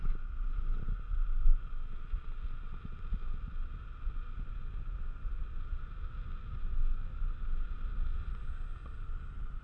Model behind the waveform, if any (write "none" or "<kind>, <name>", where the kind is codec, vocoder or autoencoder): none